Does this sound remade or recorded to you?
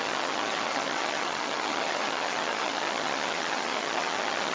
remade